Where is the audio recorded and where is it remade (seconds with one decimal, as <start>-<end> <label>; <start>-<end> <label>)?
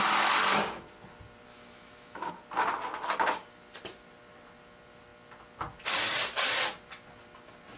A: 0.0-1.5 recorded; 1.5-2.3 remade; 2.3-7.8 recorded